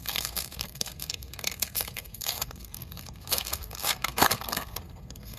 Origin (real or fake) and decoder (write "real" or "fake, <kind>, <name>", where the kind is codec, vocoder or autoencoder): fake, codec, SNAC